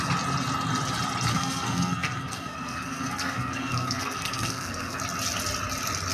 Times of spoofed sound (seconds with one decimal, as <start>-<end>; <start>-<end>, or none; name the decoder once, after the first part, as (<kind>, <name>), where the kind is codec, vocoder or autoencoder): 1.3-5.0 (codec, SNAC)